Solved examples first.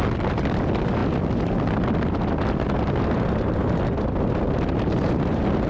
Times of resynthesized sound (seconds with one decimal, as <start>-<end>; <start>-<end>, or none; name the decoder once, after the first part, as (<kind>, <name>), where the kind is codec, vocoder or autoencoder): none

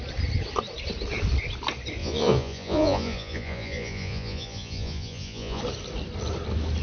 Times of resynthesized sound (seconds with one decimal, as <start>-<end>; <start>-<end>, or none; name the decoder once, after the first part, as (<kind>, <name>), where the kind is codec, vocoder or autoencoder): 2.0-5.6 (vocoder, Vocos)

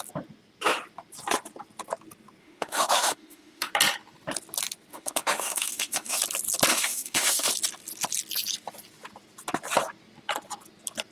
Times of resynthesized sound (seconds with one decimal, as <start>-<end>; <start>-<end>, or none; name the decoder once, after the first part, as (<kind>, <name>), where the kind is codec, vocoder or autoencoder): 2.4-3.7 (autoencoder, DAC-VAE); 4.9-6.2; 6.7-7.5

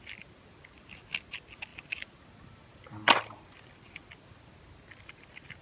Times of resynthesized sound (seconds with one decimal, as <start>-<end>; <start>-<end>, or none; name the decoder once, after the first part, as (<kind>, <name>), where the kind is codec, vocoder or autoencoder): none

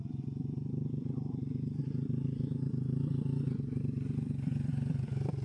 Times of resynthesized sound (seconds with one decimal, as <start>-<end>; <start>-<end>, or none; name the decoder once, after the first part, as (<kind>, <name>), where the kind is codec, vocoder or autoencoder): none

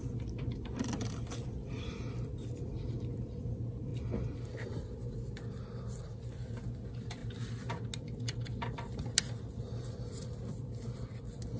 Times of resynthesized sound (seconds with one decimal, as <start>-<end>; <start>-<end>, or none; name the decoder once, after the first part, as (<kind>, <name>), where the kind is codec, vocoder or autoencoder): none

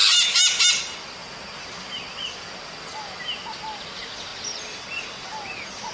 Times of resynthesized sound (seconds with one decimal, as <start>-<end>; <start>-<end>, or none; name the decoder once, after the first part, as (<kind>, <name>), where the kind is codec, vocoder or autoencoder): none

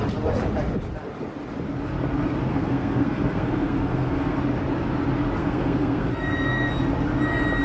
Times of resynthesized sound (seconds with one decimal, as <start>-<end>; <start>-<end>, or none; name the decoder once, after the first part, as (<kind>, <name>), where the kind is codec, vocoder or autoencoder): 2.5-4.4 (codec, SNAC); 5.4-6.7